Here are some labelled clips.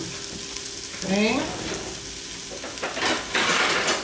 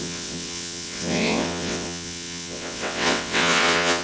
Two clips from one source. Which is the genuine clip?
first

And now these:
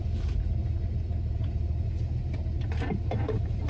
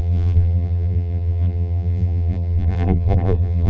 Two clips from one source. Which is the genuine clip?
first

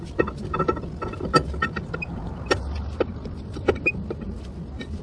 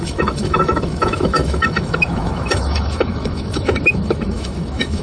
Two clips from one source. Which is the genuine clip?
first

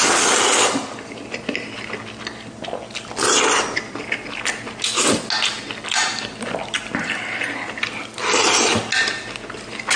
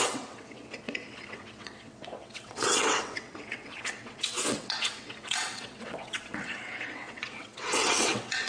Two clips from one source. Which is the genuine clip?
first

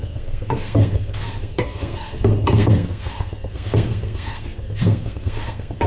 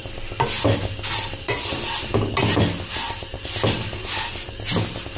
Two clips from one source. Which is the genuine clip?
second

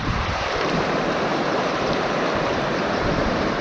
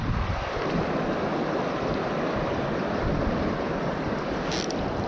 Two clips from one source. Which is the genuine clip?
second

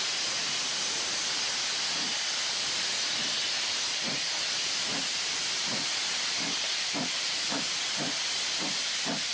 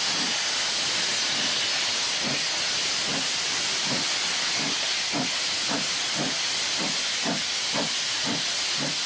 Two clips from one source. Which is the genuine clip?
second